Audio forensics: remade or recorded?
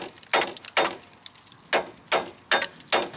recorded